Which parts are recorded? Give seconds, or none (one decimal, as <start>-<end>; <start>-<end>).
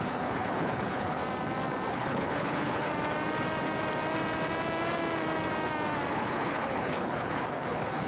1.2-1.9; 2.9-6.1